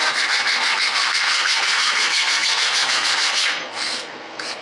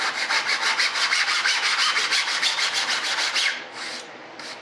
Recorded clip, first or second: second